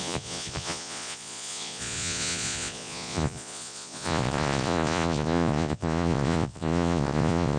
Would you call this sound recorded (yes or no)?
no